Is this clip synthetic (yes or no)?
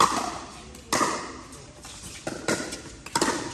no